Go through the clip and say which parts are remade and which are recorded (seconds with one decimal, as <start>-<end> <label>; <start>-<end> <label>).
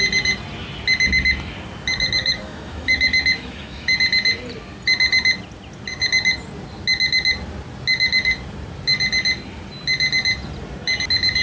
0.0-2.2 recorded; 2.2-4.0 remade; 4.0-11.4 recorded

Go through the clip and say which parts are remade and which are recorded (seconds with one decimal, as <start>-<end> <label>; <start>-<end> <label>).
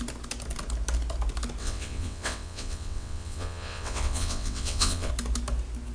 0.0-1.6 recorded; 1.6-5.1 remade; 5.1-5.9 recorded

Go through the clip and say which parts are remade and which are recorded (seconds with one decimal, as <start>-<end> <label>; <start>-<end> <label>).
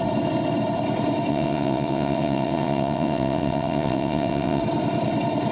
0.0-1.3 recorded; 1.3-4.6 remade; 4.6-5.5 recorded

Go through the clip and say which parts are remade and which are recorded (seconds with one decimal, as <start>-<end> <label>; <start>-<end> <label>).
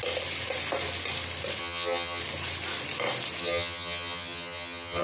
0.0-1.6 recorded; 1.6-2.2 remade; 2.2-3.4 recorded; 3.4-5.0 remade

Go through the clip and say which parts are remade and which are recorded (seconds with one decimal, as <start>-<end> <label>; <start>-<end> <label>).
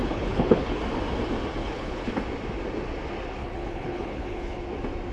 0.0-0.8 remade; 0.8-1.6 recorded; 1.6-2.1 remade; 2.1-3.4 recorded; 3.4-4.6 remade; 4.6-5.1 recorded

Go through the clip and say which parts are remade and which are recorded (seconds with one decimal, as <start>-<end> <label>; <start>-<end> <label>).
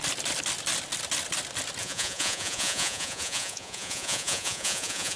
0.0-1.8 recorded; 1.8-5.2 remade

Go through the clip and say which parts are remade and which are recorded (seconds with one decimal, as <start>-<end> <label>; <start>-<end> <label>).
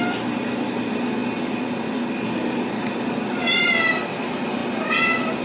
0.0-5.4 recorded